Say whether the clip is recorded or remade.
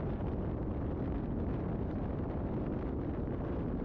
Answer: recorded